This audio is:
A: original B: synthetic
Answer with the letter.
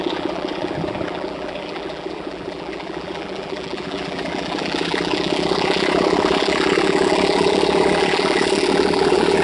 B